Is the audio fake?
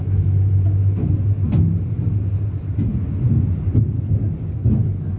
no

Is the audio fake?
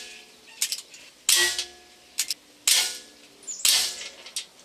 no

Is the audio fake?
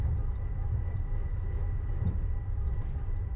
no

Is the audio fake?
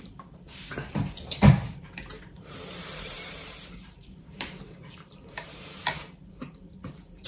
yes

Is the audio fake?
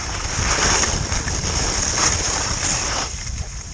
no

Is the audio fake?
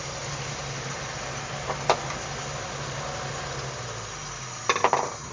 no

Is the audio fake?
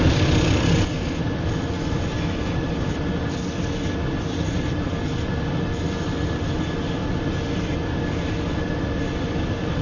no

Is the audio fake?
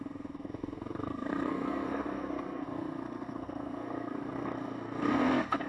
yes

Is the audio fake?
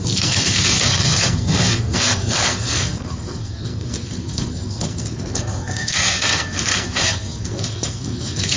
yes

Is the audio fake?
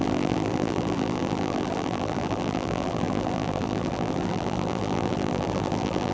yes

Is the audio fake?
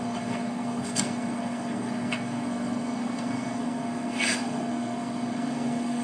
yes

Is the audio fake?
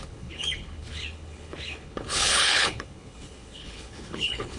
yes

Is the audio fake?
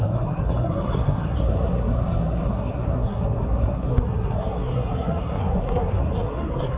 yes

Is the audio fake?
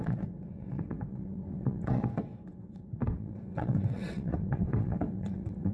yes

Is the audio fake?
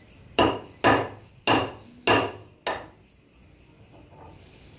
no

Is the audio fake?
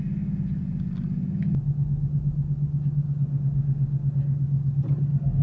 no